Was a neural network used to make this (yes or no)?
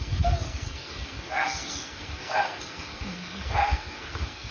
yes